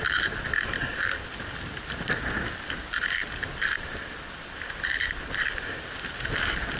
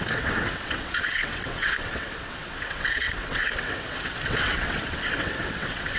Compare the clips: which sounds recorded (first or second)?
first